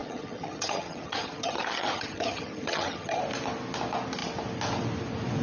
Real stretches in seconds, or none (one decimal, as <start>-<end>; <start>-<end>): 3.2-5.4